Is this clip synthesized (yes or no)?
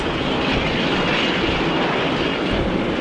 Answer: no